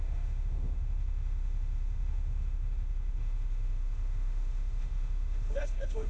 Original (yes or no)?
no